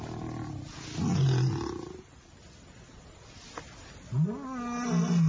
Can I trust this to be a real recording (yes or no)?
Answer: yes